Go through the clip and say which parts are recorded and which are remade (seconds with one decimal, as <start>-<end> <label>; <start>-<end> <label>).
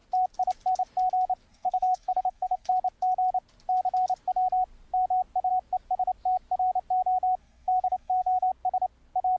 0.0-1.5 recorded; 1.5-2.7 remade; 2.7-7.4 recorded; 7.4-8.5 remade; 8.5-9.4 recorded